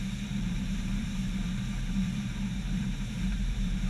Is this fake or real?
fake